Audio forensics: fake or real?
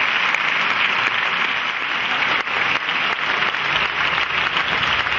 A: real